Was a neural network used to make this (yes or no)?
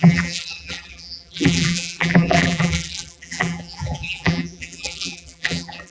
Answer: yes